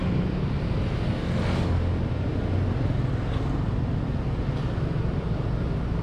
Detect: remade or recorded recorded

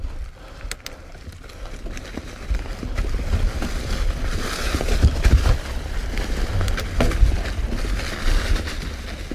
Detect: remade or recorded recorded